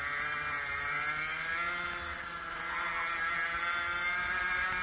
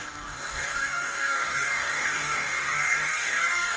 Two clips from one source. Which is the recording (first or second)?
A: first